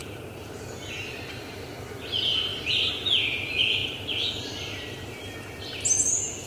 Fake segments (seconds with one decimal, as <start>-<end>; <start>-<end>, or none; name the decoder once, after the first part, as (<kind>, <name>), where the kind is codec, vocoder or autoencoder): none